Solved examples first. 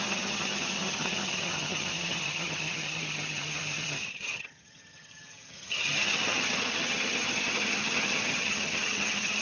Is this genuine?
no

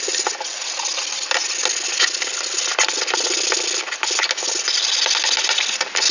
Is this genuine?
yes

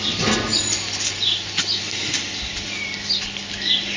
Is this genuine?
yes